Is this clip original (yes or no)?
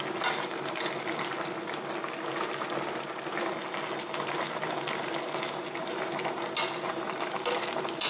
yes